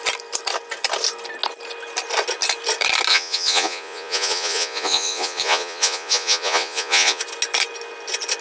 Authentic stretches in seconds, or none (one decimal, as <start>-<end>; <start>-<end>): 0.0-3.1; 7.2-8.4